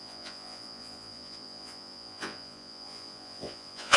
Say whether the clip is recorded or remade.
remade